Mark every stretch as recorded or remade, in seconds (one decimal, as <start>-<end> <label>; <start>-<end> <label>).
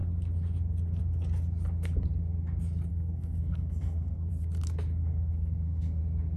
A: 0.0-2.9 recorded; 2.9-4.3 remade; 4.3-5.0 recorded; 5.0-6.0 remade; 6.0-6.4 recorded